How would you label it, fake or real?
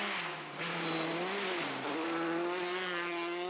real